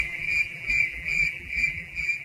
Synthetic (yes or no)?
yes